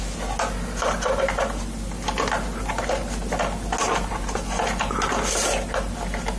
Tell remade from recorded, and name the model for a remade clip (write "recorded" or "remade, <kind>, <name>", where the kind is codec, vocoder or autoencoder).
recorded